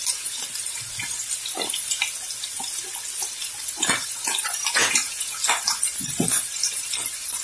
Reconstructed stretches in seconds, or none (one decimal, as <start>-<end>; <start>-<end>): 4.8-5.4